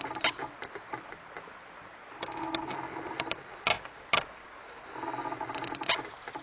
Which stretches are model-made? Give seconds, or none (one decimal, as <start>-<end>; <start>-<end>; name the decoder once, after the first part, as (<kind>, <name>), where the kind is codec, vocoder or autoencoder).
none